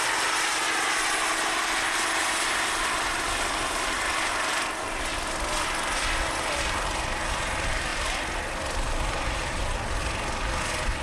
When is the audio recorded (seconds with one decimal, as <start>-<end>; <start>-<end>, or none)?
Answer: 0.0-7.9; 9.5-11.0